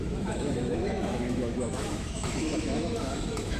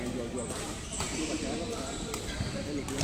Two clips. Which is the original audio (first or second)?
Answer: second